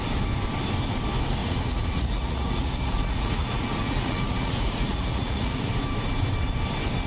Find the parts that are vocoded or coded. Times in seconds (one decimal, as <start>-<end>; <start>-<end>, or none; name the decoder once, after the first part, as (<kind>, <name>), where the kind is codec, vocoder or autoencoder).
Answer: 1.4-5.7 (vocoder, Vocos)